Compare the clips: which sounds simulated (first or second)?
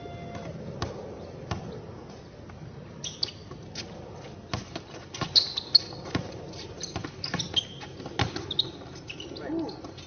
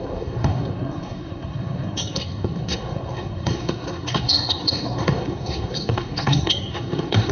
second